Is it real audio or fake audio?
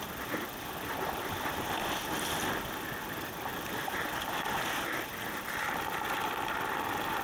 real